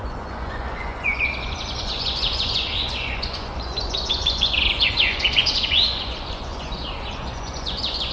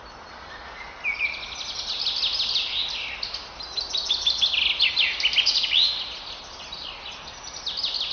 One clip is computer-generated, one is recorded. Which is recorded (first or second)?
second